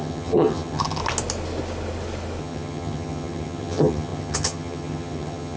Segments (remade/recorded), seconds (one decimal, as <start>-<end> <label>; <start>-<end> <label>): 0.0-1.0 remade; 1.0-2.4 recorded; 2.4-5.6 remade